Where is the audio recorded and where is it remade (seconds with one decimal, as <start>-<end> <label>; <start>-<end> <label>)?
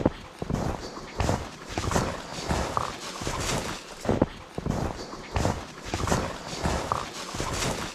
0.0-7.9 recorded